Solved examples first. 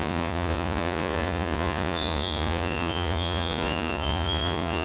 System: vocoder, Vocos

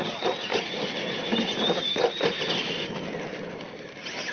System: vocoder, BigVGAN v2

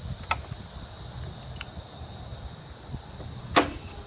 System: none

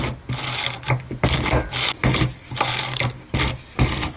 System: none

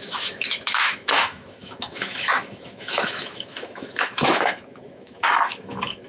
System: autoencoder, DAC-VAE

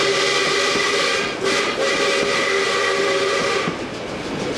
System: none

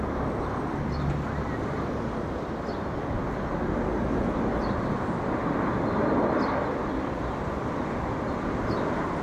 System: none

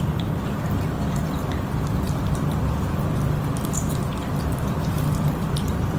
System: vocoder, BigVGAN v2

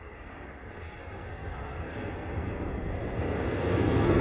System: codec, SNAC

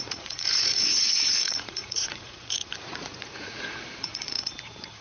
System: vocoder, Vocos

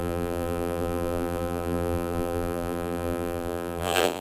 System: vocoder, BigVGAN v2